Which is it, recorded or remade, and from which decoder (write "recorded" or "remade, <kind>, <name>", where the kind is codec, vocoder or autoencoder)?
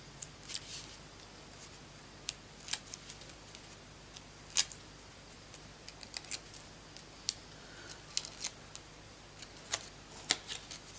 recorded